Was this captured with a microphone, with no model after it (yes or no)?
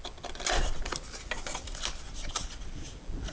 yes